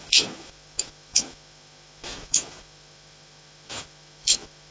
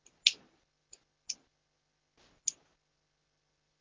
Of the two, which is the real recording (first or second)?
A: second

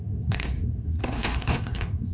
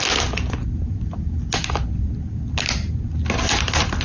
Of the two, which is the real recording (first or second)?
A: second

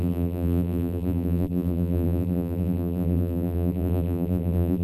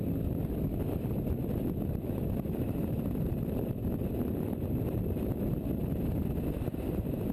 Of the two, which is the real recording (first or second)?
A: second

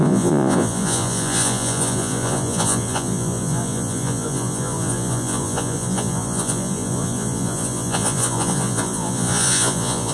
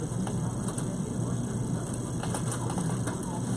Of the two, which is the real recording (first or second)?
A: second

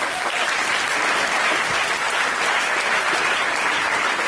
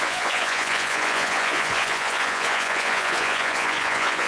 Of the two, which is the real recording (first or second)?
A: first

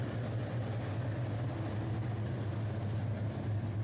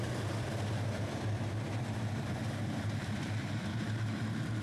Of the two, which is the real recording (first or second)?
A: first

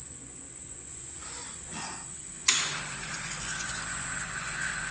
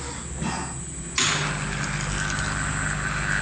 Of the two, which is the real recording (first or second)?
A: second